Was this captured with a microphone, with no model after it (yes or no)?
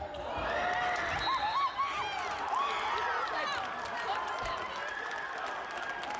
yes